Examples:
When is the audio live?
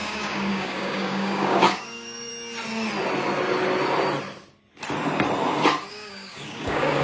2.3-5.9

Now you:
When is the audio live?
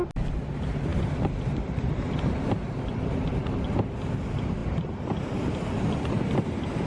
0.0-6.9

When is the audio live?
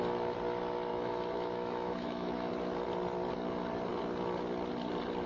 0.0-0.9; 2.5-5.3